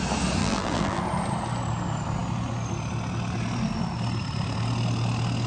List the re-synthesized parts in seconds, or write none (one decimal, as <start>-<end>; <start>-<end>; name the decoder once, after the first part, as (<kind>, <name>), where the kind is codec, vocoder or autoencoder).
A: 0.4-1.0 (vocoder, BigVGAN v2)